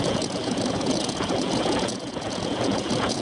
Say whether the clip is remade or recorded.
remade